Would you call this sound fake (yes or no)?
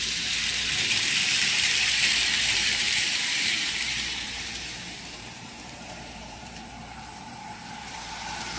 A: yes